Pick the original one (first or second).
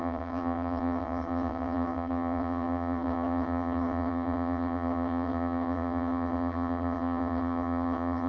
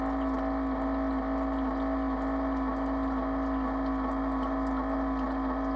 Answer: second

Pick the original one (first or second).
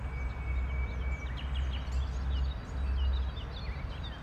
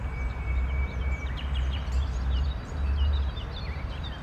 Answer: first